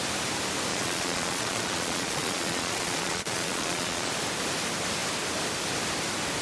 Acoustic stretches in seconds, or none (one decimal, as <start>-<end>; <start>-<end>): 0.0-0.7; 4.1-6.4